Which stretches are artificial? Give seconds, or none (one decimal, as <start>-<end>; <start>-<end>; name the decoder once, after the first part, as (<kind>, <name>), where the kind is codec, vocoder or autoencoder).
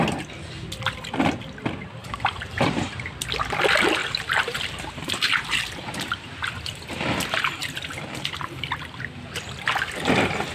2.0-3.1 (vocoder, BigVGAN v2); 4.0-5.7